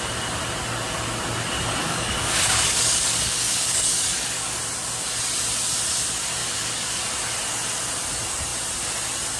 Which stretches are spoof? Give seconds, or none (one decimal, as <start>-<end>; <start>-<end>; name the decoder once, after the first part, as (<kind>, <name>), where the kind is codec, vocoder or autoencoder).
1.8-4.6 (codec, DAC); 6.4-7.0